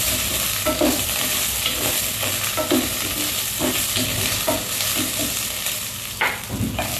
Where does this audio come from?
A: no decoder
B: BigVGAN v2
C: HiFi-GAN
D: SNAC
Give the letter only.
A